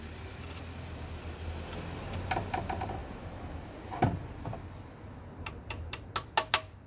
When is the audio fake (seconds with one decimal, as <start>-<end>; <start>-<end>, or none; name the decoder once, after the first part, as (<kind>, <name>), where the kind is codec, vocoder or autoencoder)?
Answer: none